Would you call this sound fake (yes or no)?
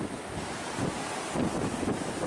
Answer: no